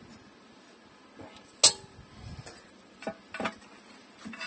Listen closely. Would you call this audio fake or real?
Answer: real